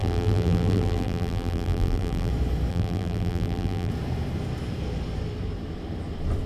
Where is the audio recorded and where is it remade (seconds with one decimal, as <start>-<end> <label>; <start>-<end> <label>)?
0.0-2.3 remade; 2.3-2.7 recorded; 2.7-3.9 remade; 3.9-6.5 recorded